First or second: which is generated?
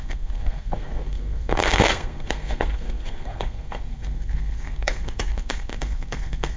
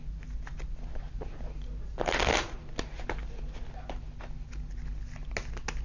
first